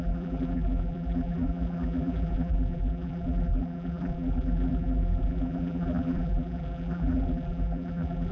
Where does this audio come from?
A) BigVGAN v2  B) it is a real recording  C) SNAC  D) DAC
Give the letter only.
A